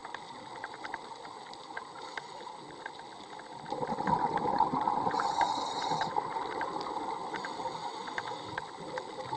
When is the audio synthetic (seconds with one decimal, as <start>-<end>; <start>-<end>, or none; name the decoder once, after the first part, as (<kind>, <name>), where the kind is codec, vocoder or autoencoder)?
none